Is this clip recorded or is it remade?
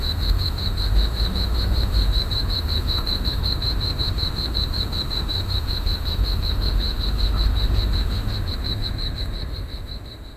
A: remade